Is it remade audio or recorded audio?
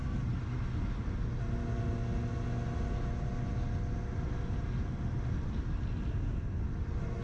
recorded